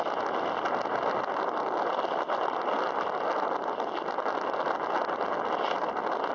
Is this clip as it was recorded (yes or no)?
yes